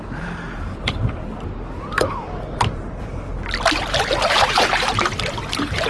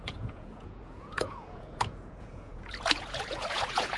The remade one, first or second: second